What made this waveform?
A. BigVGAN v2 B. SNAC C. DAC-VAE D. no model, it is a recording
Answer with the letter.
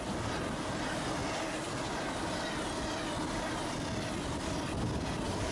D